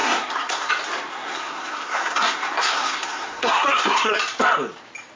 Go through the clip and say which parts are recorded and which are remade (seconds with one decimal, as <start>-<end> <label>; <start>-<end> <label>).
0.0-0.7 remade; 0.7-1.1 recorded; 1.1-4.2 remade; 4.2-5.2 recorded